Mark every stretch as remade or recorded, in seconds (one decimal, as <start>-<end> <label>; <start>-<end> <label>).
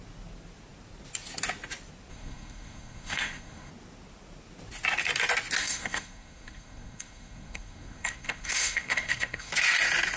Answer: 0.0-2.1 recorded; 2.1-3.7 remade; 3.7-5.6 recorded; 5.6-9.5 remade; 9.5-10.2 recorded